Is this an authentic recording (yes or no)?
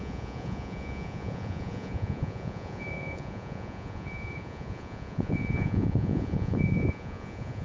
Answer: no